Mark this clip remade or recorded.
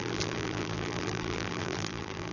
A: remade